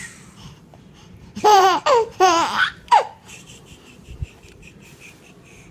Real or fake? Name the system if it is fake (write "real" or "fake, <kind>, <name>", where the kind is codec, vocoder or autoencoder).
fake, vocoder, BigVGAN v2